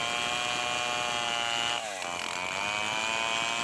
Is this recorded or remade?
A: recorded